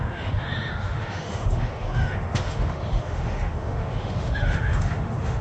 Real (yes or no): no